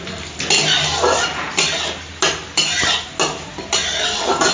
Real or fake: real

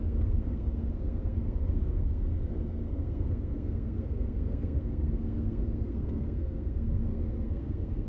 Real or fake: fake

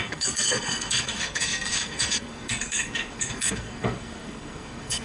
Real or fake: fake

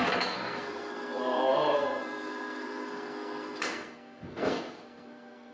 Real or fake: fake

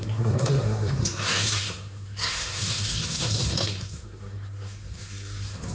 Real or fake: fake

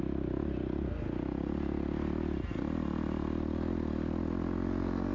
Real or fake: real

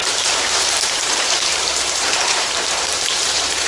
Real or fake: fake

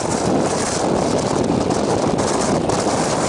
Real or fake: fake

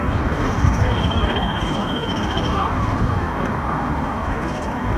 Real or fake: fake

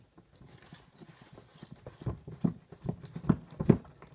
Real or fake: real